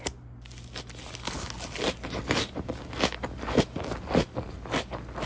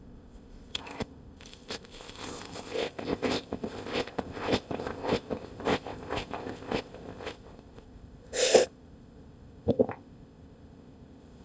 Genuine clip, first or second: first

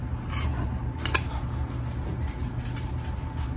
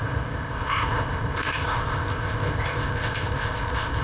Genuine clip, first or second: first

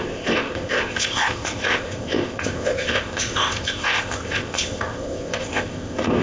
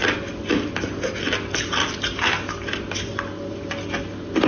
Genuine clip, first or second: second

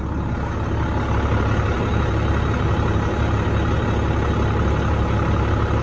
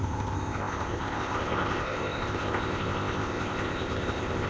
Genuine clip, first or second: first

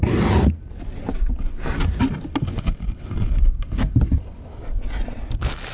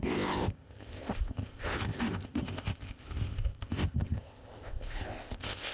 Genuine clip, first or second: first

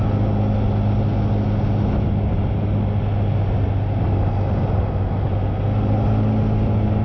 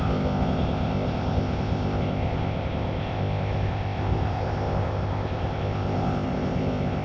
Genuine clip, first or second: first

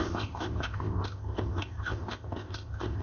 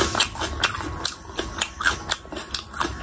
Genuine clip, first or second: second